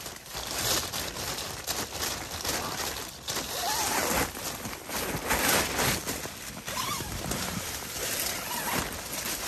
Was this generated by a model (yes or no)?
no